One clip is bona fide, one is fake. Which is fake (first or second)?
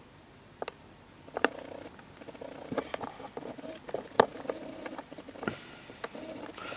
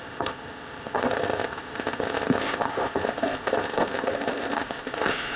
second